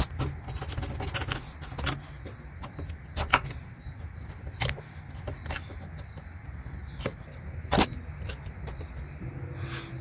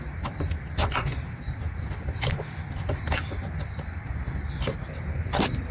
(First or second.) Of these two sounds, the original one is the first